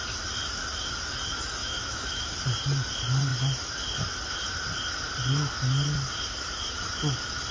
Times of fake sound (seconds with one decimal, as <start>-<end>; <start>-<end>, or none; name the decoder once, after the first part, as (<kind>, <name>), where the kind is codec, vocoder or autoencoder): 1.6-2.3 (autoencoder, DAC-VAE)